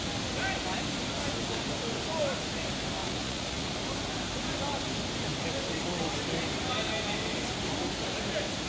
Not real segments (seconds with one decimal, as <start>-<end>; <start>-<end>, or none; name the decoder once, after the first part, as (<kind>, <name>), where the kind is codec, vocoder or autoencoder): 3.0-3.7 (vocoder, Vocos)